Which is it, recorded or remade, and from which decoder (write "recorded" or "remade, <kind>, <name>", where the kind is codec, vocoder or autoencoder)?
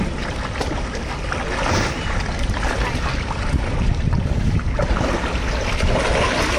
recorded